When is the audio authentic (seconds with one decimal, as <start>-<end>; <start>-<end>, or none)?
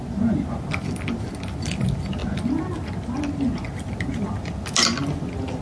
0.0-5.6